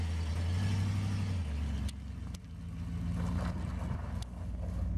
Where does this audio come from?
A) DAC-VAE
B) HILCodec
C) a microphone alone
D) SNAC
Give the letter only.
C